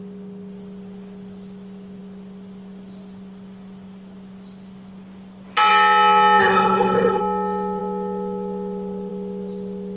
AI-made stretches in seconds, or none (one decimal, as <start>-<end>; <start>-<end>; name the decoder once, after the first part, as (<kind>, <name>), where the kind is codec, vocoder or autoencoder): 6.4-7.2 (codec, SNAC)